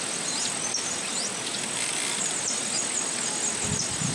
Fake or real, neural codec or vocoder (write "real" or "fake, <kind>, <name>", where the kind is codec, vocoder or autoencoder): real